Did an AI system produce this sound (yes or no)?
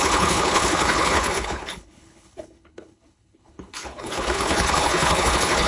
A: yes